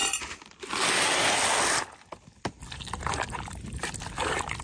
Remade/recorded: recorded